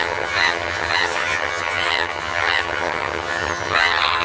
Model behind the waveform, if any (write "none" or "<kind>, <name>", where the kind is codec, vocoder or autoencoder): vocoder, HiFi-GAN